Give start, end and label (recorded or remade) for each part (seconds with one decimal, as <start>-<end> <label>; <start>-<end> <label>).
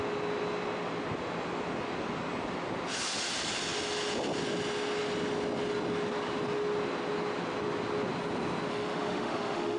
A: 0.0-8.7 recorded; 8.7-9.8 remade